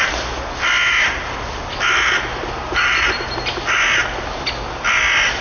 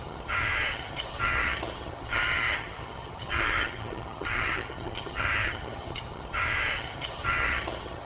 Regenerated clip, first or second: second